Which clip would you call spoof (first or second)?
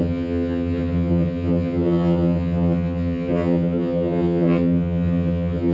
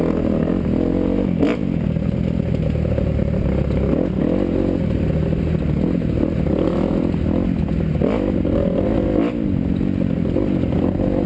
first